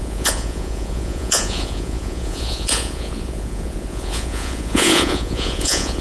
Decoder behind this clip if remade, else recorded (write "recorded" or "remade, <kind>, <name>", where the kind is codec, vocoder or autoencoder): remade, vocoder, Vocos